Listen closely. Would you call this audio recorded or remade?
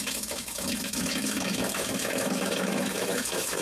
remade